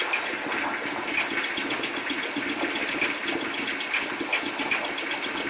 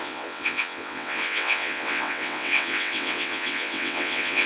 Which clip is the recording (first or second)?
first